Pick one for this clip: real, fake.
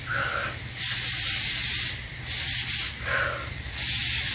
real